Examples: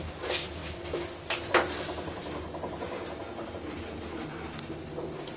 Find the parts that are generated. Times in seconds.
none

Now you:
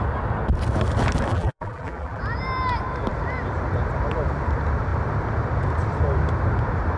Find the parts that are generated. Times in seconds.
1.3-2.2 (vocoder, BigVGAN v2)

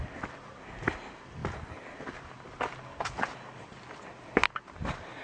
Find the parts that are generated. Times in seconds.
none

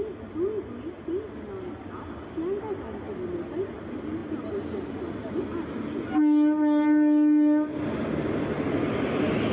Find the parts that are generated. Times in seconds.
none